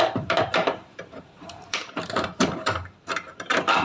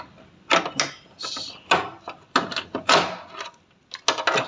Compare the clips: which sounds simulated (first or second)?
first